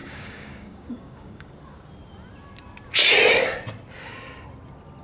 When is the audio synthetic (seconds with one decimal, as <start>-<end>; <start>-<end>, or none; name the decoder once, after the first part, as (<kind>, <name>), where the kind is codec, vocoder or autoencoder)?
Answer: 0.0-1.5 (codec, DAC)